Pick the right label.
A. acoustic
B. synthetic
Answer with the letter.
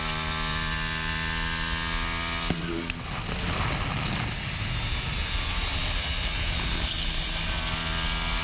A